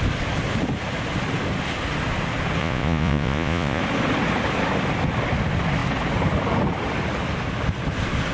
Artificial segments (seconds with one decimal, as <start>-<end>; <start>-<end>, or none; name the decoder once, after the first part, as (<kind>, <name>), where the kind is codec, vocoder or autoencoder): 2.6-3.8 (vocoder, Vocos)